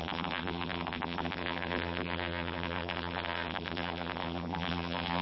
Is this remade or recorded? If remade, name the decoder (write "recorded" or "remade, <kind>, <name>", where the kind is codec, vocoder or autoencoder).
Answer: remade, vocoder, BigVGAN v2